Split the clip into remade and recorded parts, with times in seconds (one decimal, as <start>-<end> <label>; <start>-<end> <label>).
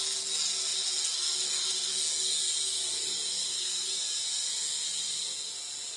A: 0.0-3.3 recorded; 3.3-3.9 remade; 3.9-6.0 recorded